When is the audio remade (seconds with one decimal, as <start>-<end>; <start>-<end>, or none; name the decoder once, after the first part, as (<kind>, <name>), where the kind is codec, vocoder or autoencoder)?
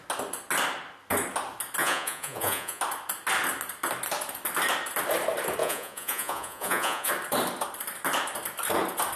1.8-2.8 (vocoder, Vocos); 5.6-7.1